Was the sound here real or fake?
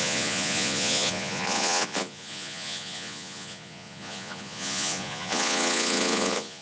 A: fake